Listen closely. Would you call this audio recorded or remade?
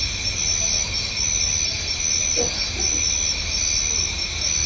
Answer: recorded